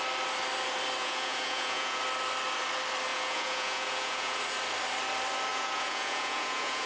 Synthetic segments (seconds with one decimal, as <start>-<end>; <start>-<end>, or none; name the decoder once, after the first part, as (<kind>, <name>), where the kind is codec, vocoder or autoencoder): 1.0-2.0 (vocoder, Vocos); 3.1-4.4; 5.5-6.9